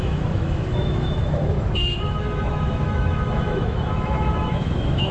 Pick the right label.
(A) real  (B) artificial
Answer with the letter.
B